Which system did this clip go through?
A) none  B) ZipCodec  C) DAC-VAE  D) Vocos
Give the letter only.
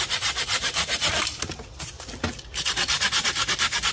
A